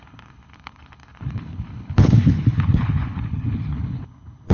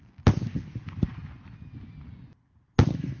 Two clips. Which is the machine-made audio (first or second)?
first